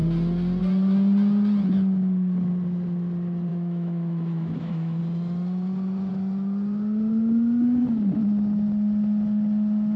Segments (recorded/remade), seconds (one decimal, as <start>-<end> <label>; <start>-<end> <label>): 0.0-3.5 recorded; 3.5-5.0 remade; 5.0-10.0 recorded